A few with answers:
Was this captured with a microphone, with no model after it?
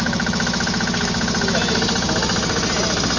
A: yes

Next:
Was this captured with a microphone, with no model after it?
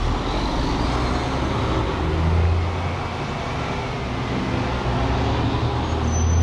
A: yes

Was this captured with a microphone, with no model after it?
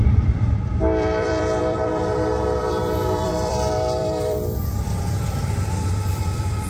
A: no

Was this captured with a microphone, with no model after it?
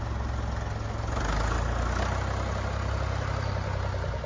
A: yes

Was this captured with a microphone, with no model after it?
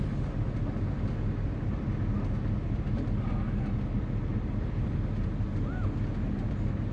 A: yes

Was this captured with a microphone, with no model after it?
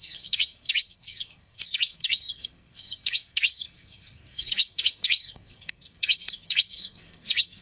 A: no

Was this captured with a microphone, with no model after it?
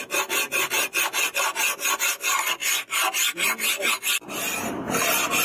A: yes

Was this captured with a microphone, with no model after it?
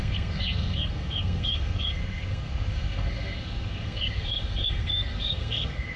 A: no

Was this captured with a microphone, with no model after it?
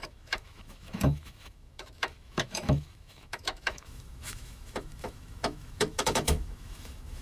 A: no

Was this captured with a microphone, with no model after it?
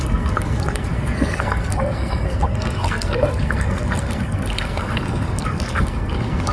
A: no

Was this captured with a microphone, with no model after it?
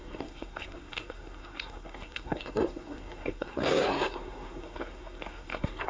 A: no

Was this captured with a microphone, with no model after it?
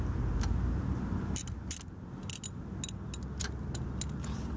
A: yes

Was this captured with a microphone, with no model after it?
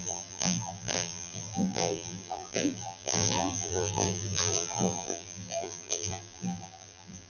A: no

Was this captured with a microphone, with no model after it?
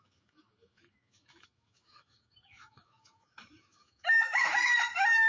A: no